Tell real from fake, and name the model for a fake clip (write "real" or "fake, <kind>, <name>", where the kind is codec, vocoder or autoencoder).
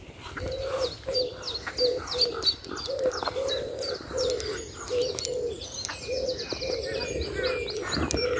real